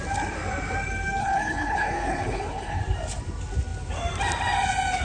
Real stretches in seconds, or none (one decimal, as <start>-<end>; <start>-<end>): 0.0-1.2; 2.8-5.0